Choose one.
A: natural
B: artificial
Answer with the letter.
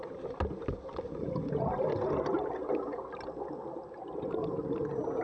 A